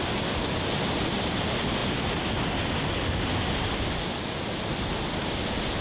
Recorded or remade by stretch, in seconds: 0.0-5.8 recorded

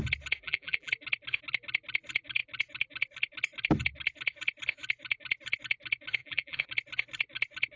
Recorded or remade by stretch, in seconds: 0.0-0.4 recorded; 0.4-0.9 remade; 0.9-6.2 recorded; 6.2-6.7 remade; 6.7-7.8 recorded

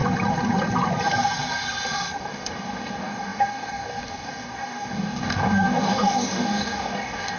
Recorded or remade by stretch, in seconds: 0.0-2.2 recorded; 2.2-7.4 remade

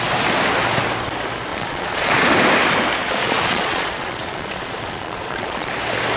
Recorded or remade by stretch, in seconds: 0.0-1.5 recorded; 1.5-2.1 remade; 2.1-3.0 recorded; 3.0-5.7 remade; 5.7-6.2 recorded

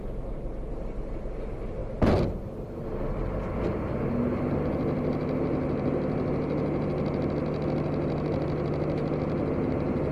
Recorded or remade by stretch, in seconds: 0.0-10.1 recorded